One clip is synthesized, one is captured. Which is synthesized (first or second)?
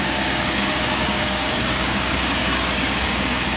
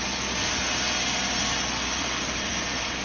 first